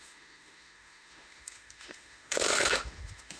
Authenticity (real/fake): fake